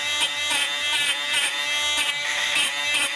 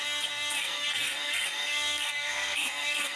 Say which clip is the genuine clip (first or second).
first